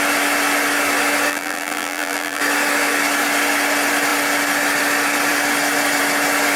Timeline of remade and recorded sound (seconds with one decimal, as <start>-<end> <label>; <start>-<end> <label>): 0.0-1.3 recorded; 1.3-2.4 remade; 2.4-6.6 recorded